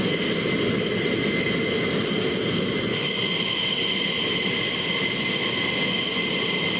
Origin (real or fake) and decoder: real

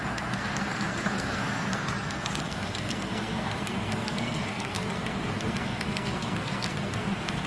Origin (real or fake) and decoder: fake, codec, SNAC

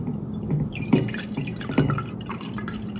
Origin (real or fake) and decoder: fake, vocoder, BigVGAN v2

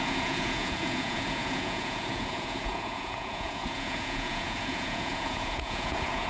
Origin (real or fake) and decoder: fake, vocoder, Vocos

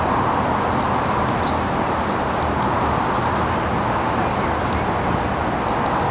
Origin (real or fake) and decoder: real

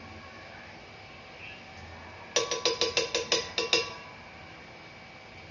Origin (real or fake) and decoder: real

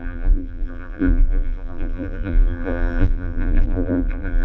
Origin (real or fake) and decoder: fake, vocoder, BigVGAN v2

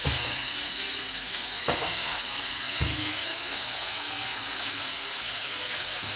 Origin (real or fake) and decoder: fake, codec, SNAC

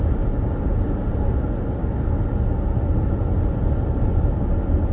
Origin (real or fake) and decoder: real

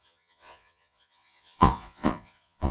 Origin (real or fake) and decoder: fake, vocoder, Vocos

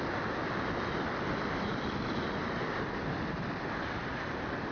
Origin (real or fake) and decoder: real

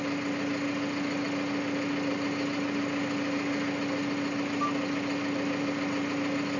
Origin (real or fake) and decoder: real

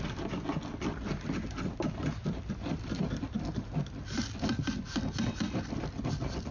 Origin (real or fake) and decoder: real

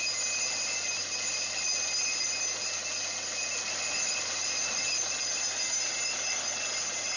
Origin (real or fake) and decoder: real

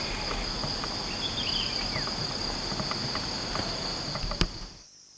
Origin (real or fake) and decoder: real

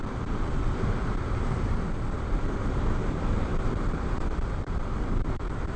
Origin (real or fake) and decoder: fake, vocoder, BigVGAN v2